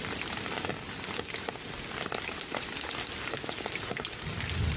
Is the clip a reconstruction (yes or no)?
no